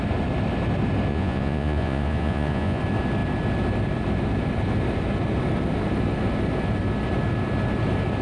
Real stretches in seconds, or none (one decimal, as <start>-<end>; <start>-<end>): 0.0-1.1; 2.8-8.2